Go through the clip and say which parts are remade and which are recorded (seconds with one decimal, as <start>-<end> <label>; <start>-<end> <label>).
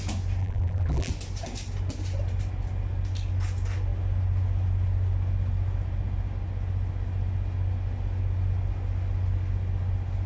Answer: 0.0-0.4 recorded; 0.4-1.1 remade; 1.1-10.3 recorded